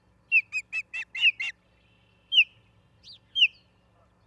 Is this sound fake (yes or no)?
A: no